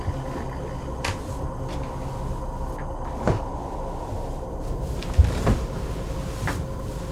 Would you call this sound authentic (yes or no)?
yes